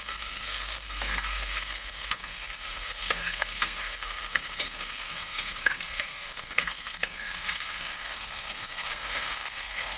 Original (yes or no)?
no